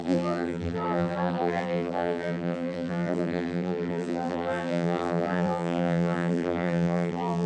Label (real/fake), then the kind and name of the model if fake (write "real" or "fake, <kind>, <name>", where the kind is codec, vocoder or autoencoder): fake, vocoder, BigVGAN v2